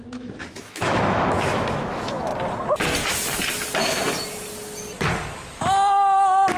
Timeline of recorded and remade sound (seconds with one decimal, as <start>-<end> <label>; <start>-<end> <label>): 0.0-2.3 remade; 2.3-6.6 recorded